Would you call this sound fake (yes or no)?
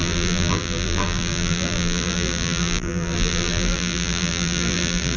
yes